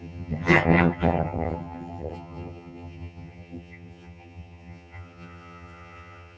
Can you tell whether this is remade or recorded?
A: remade